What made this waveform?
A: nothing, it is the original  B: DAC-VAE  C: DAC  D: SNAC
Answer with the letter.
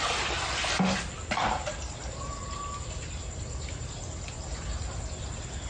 A